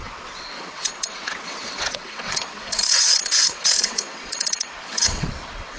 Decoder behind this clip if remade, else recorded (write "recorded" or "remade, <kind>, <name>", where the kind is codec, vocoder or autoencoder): remade, vocoder, WaveNeXt